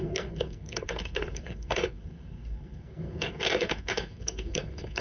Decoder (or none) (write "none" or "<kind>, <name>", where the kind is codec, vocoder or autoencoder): codec, SNAC